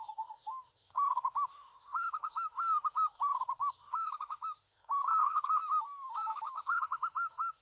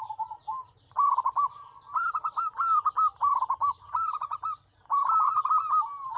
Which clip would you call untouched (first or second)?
second